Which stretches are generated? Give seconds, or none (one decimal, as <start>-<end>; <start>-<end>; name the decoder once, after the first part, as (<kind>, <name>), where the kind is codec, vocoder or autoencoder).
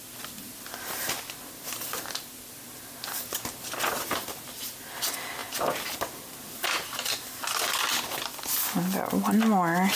none